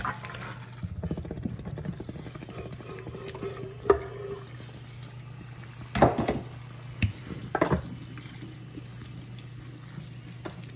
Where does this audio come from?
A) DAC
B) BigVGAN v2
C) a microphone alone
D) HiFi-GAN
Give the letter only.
C